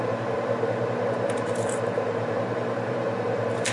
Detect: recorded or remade remade